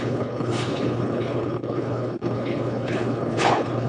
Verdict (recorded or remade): remade